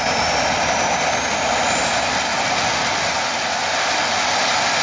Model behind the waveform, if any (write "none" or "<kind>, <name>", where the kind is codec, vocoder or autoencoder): none